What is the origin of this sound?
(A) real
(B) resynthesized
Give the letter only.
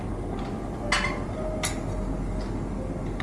A